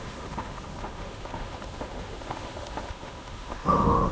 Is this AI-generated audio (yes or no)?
yes